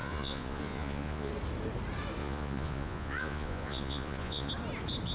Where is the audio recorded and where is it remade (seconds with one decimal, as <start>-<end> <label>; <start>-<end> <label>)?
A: 0.0-1.3 remade; 1.3-2.2 recorded; 2.2-4.5 remade; 4.5-5.1 recorded